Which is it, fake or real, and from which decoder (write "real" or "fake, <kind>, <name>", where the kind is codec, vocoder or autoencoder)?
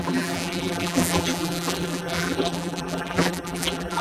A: fake, vocoder, BigVGAN v2